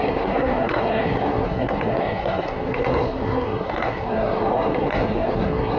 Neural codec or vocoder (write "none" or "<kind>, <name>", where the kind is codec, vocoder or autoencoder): codec, SNAC